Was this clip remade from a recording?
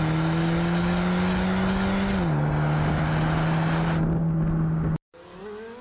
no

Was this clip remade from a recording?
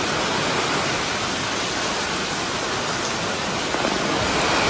no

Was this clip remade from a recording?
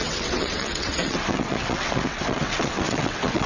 yes